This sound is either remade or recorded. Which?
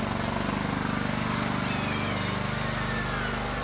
recorded